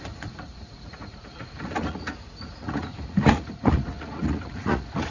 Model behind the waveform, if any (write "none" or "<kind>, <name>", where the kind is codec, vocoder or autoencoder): vocoder, Vocos